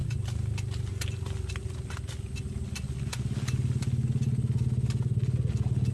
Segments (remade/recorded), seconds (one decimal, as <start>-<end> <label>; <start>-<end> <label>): 0.0-5.9 recorded